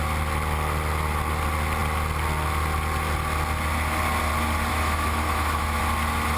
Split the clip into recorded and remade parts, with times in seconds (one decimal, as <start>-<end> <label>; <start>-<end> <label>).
0.0-4.7 recorded; 4.7-5.8 remade; 5.8-6.4 recorded